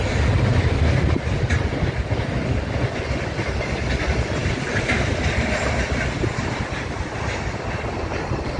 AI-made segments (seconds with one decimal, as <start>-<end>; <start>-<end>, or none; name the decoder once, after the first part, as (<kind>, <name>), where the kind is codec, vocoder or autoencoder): none